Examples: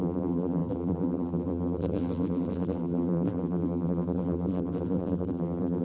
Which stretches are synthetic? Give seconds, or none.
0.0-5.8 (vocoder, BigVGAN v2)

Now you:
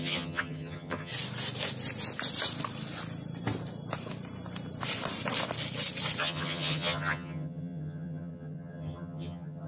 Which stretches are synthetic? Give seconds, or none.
0.0-1.1 (vocoder, HiFi-GAN); 6.2-9.7